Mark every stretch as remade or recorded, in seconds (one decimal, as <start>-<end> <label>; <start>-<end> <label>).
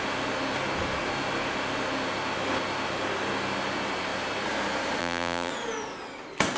0.0-5.0 recorded; 5.0-5.5 remade; 5.5-6.6 recorded